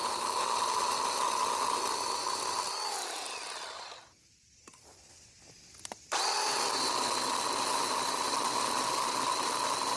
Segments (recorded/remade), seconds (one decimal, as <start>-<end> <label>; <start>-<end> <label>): 0.0-10.0 recorded